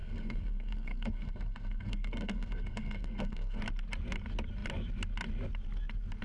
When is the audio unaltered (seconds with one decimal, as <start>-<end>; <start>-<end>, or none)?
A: 3.6-6.2